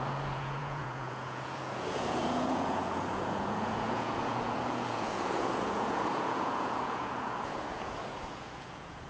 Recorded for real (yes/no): no